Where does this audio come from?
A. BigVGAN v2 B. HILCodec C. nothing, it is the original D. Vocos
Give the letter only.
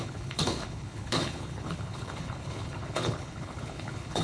B